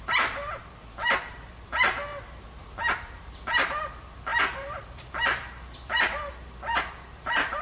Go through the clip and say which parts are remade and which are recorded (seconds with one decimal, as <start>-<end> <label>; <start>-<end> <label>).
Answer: 0.0-2.1 remade; 2.1-2.8 recorded; 2.8-7.6 remade